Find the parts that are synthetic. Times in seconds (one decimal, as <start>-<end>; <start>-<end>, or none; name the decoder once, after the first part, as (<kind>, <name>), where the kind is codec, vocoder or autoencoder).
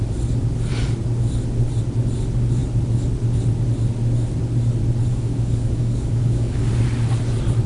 5.1-6.7 (codec, DAC)